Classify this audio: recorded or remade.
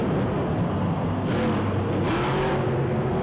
recorded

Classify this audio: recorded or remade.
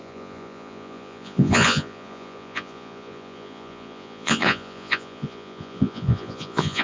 remade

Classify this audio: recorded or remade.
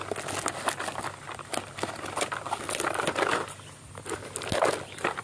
recorded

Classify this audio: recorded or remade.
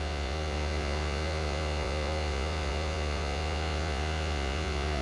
remade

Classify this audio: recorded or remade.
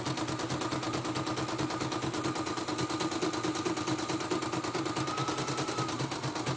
recorded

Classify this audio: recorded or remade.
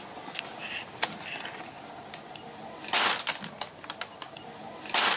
recorded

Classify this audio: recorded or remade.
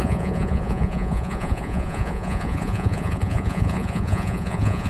remade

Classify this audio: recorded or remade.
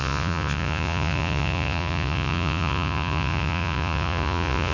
remade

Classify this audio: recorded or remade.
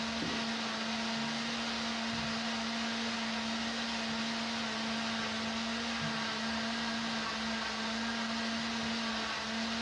recorded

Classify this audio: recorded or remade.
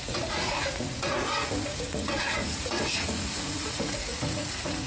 remade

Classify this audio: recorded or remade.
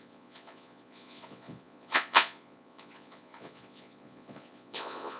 remade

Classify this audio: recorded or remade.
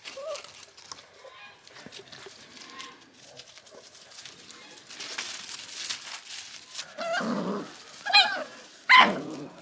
recorded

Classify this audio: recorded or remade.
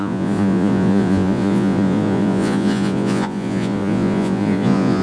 remade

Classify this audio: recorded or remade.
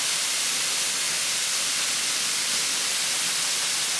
recorded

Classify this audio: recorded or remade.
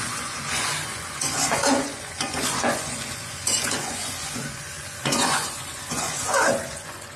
remade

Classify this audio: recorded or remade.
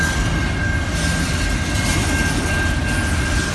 recorded